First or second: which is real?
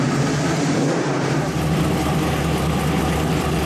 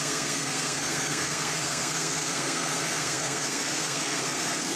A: first